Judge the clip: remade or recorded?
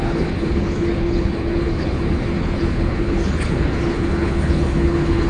remade